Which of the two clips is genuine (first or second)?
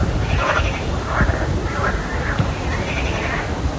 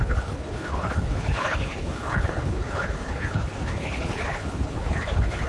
first